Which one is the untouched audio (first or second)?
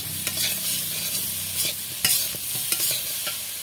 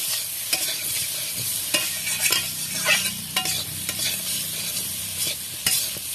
first